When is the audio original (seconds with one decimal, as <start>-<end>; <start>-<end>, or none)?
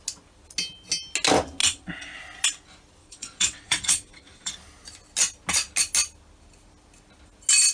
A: 0.0-1.6; 2.2-3.0; 4.5-7.7